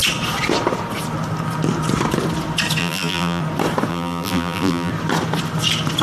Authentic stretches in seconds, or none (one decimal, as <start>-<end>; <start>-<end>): 0.0-2.8; 3.4-3.9; 4.9-6.0